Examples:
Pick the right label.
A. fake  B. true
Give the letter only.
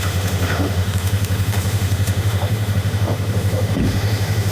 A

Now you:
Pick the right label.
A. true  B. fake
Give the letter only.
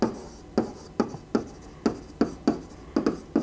A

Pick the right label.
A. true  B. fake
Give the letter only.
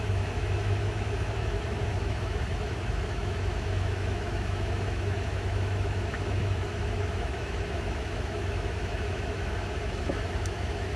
B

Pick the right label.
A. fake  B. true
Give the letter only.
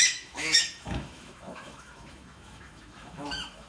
A